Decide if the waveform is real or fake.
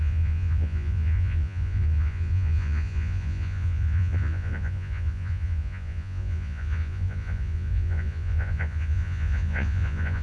fake